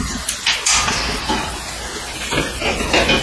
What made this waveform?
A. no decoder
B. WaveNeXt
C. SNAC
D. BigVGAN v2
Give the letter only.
A